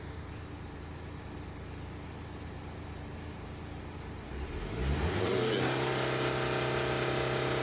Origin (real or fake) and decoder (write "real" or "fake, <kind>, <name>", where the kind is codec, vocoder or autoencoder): real